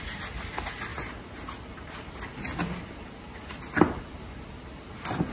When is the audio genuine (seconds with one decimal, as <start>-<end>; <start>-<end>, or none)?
0.0-5.3